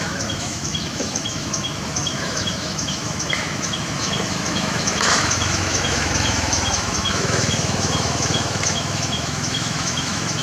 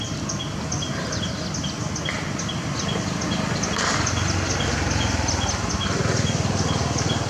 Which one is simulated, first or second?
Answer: first